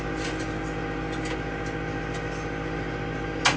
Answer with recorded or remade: recorded